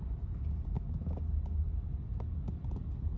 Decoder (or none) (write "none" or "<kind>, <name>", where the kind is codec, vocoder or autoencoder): none